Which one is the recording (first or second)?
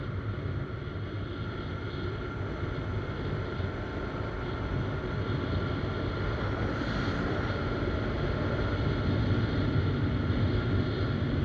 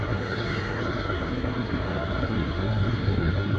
first